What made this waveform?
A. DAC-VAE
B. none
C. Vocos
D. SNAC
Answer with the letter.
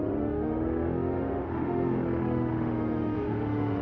A